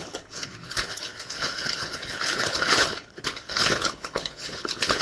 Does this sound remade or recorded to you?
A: remade